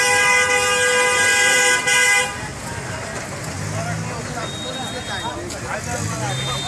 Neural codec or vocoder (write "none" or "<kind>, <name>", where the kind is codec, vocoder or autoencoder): none